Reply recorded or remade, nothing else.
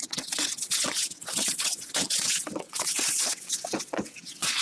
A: remade